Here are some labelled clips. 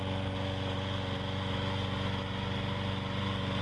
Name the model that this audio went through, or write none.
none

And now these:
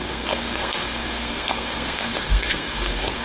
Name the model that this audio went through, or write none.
codec, SNAC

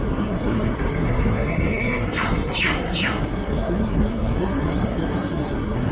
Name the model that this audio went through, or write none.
codec, SNAC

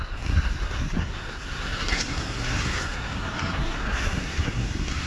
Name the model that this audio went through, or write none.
codec, SNAC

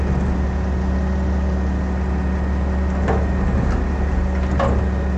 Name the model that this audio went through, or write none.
none